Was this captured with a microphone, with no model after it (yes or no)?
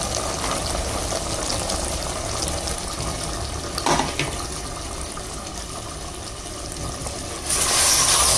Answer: yes